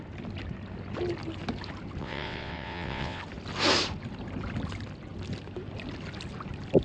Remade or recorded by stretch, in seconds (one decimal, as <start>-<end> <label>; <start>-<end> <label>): 0.0-2.0 recorded; 2.0-3.2 remade; 3.2-6.8 recorded